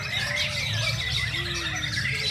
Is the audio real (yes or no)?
yes